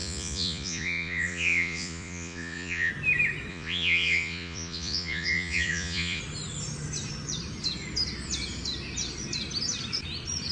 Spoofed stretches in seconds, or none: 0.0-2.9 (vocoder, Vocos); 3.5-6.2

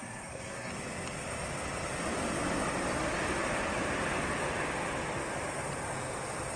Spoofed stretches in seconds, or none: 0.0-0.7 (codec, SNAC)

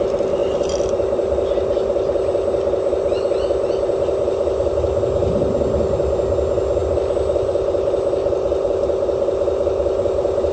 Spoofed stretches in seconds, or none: none